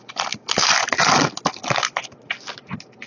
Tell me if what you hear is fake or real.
real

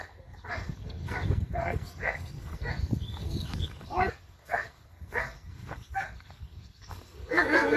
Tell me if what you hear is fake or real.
fake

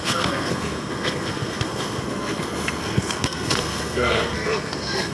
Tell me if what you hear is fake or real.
fake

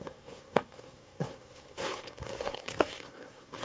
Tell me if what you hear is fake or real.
fake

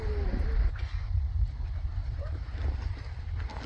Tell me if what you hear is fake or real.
real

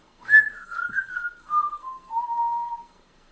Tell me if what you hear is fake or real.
fake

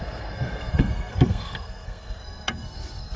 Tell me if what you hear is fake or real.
fake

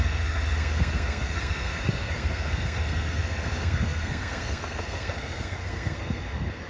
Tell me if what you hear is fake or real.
fake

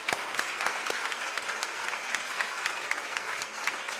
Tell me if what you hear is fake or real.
fake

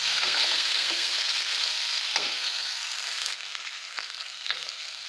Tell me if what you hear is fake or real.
fake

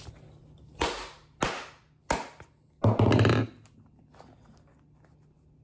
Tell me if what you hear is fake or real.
real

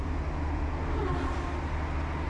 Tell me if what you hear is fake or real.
real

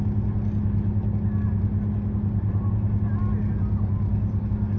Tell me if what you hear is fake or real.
real